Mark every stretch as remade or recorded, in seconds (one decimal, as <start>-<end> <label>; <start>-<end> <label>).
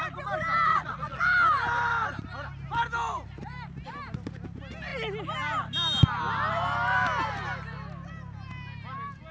0.0-0.7 recorded; 0.7-1.2 remade; 1.2-9.3 recorded